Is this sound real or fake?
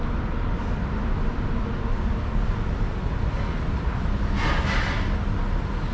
real